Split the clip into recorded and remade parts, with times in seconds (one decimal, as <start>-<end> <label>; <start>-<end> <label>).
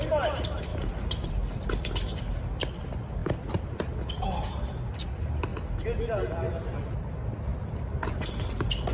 0.0-0.7 recorded; 0.7-1.3 remade; 1.3-8.9 recorded